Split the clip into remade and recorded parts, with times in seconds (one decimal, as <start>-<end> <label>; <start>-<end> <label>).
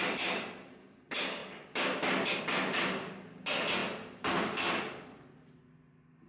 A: 0.0-6.3 recorded